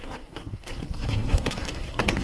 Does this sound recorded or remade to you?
remade